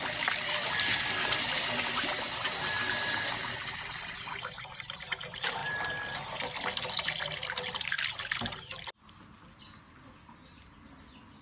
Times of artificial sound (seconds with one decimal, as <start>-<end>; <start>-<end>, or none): none